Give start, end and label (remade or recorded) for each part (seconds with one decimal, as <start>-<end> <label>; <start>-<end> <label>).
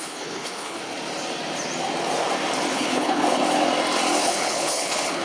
0.0-0.8 remade; 0.8-2.7 recorded; 2.7-3.4 remade; 3.4-4.2 recorded; 4.2-5.2 remade